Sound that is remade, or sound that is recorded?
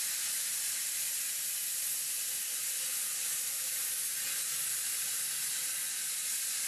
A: recorded